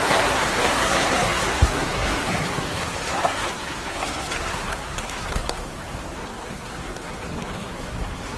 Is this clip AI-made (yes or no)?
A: yes